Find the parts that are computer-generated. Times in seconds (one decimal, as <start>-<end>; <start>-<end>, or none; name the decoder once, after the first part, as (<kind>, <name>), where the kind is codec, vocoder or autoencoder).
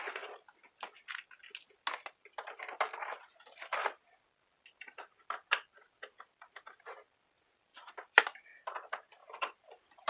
7.7-8.5 (vocoder, BigVGAN v2); 9.2-10.1